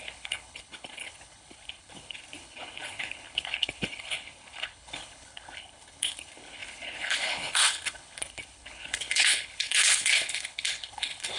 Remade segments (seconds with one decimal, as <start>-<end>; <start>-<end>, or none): 0.0-11.4